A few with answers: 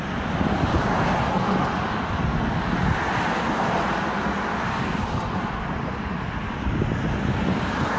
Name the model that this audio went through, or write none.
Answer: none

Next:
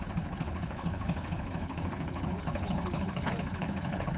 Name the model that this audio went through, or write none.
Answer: codec, HILCodec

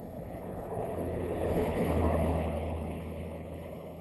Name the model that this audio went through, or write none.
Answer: codec, HILCodec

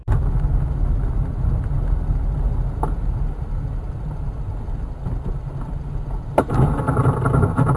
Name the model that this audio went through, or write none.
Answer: none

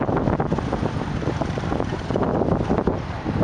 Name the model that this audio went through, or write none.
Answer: none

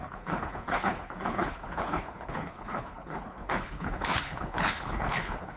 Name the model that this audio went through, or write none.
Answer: codec, HILCodec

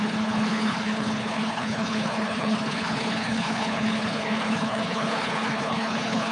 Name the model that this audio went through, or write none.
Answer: codec, HILCodec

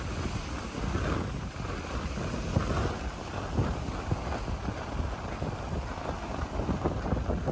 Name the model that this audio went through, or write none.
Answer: none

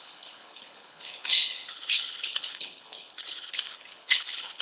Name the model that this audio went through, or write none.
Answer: codec, HILCodec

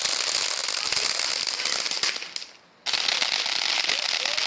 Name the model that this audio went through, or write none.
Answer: none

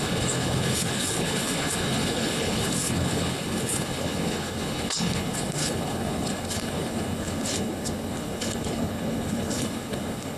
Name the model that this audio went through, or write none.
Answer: codec, HILCodec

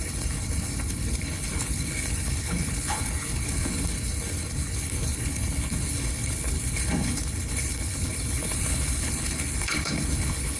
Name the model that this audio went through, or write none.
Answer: codec, HILCodec